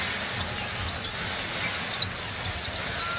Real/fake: real